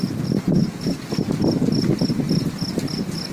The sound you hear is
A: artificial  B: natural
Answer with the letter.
B